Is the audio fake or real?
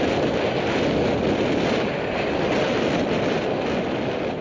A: real